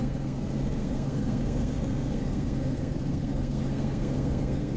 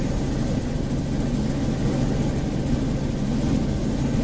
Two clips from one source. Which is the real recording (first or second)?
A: second